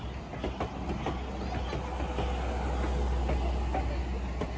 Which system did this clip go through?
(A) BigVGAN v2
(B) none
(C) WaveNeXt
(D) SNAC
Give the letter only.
B